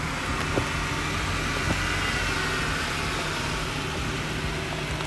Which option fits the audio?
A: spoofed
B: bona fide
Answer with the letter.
B